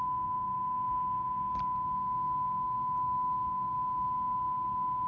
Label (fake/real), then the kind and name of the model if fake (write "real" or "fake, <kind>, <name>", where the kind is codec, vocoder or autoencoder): real